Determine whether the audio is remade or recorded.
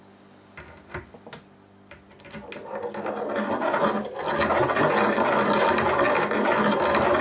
recorded